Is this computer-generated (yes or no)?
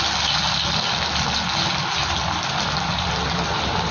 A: no